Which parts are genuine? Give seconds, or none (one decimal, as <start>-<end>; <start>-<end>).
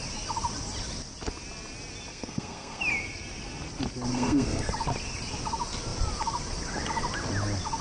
0.0-2.1; 2.8-4.1; 4.7-7.8